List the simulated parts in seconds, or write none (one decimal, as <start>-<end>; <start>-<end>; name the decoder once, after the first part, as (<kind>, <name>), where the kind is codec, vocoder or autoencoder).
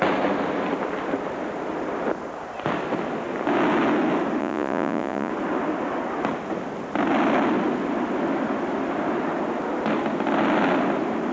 4.4-5.3 (vocoder, Vocos)